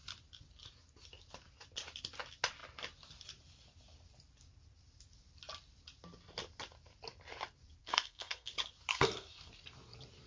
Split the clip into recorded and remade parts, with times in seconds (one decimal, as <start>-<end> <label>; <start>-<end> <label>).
0.0-7.8 recorded; 7.8-8.5 remade; 8.5-8.9 recorded; 8.9-9.5 remade; 9.5-10.3 recorded